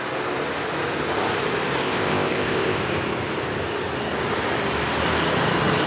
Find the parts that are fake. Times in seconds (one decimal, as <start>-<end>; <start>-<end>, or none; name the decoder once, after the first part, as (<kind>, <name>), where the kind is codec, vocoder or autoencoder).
1.8-2.8 (codec, ZipCodec)